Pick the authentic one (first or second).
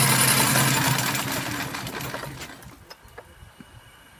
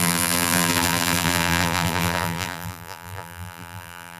first